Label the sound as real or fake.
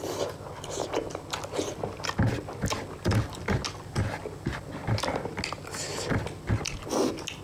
real